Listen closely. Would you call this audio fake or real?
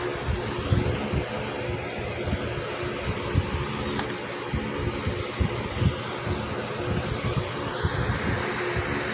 real